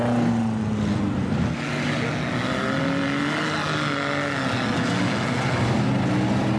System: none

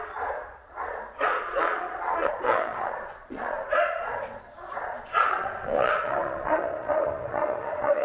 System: vocoder, Vocos